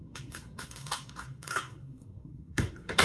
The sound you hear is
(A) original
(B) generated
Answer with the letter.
B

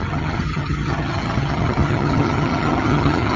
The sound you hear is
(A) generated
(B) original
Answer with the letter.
A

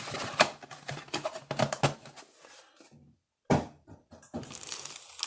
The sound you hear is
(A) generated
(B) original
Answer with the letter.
B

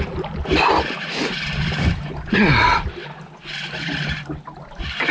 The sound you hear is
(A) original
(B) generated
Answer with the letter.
A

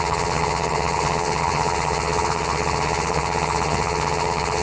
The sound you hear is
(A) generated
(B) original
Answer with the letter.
A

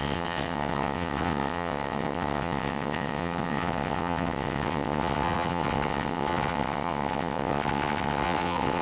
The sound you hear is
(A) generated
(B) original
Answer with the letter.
A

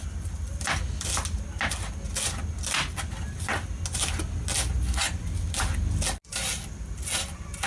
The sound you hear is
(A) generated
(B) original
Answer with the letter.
B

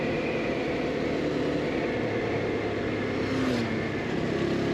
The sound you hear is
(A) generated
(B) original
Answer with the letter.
B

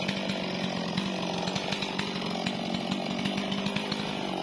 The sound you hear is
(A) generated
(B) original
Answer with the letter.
B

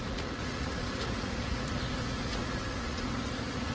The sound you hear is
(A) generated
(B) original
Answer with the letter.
A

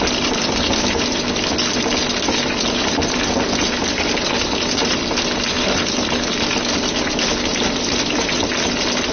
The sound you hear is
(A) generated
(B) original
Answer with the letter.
B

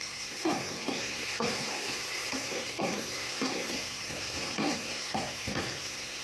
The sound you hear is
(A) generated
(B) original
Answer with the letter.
A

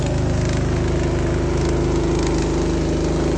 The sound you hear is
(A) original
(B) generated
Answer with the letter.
A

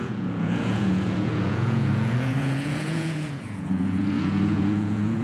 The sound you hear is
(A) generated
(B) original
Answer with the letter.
A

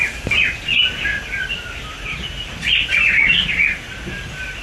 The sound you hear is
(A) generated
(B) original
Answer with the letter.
B